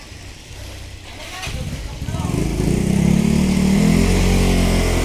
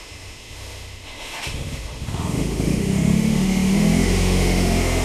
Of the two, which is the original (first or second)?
first